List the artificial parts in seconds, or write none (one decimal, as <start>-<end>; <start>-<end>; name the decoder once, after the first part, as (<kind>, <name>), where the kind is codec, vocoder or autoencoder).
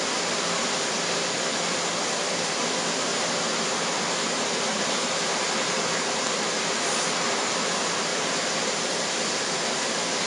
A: 3.1-3.9 (vocoder, BigVGAN v2); 4.7-5.4; 8.1-10.3